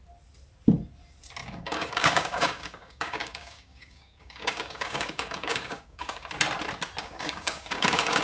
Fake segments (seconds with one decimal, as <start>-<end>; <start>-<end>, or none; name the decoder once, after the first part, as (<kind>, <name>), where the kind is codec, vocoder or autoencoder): 1.4-6.3 (codec, DAC); 7.0-8.2